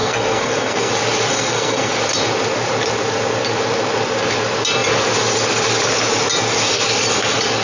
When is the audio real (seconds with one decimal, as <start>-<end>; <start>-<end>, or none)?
0.9-1.3; 1.9-7.6